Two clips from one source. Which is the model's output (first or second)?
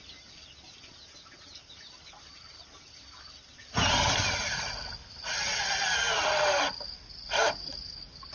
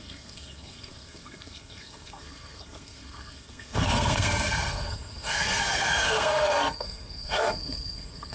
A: second